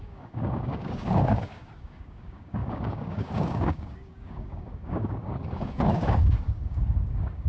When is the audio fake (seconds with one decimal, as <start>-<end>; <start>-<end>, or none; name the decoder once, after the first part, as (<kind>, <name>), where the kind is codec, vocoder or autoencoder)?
0.0-7.5 (codec, DAC)